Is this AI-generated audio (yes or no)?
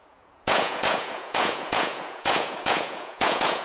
yes